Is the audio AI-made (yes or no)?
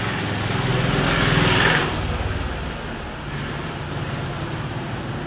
no